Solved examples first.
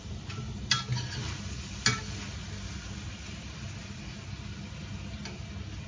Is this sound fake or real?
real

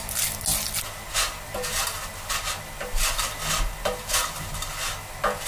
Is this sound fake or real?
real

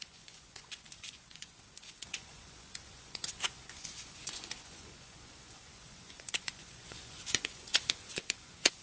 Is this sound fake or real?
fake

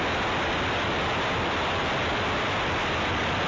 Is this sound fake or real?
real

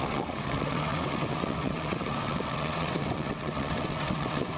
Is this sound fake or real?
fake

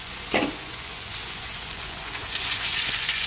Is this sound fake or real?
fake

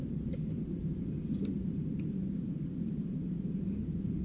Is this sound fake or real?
fake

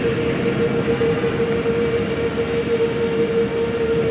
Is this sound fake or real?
real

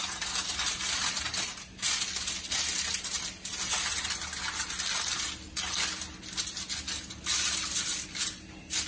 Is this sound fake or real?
real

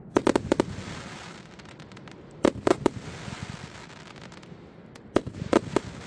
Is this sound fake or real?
real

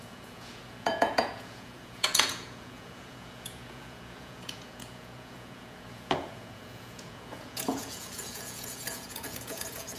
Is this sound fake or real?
fake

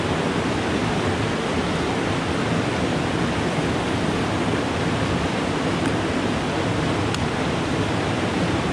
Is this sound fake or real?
real